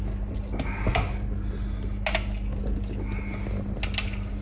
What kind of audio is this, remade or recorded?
recorded